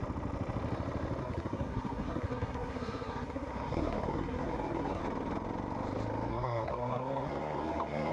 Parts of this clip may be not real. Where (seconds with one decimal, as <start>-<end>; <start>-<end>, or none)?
1.2-5.0; 6.3-8.1